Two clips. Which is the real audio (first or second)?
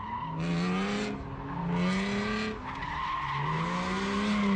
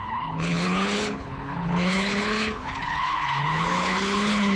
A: first